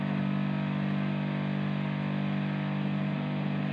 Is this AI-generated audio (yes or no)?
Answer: no